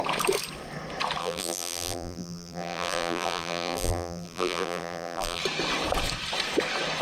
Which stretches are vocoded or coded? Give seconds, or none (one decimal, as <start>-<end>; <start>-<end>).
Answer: 1.2-5.4